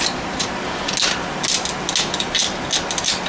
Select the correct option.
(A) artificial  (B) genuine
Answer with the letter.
B